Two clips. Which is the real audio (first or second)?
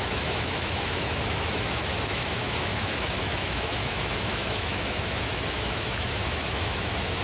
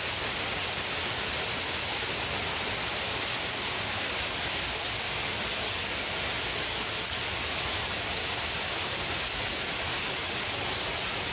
second